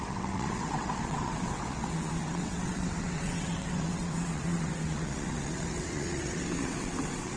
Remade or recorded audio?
remade